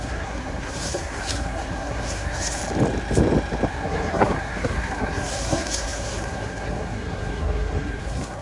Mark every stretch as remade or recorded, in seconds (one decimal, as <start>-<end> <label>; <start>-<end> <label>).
0.0-2.6 remade; 2.6-3.7 recorded; 3.7-8.4 remade